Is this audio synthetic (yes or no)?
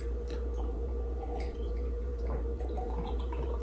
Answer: yes